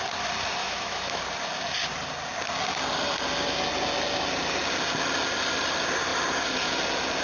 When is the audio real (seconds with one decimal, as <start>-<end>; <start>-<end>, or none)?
0.0-0.6; 1.2-7.2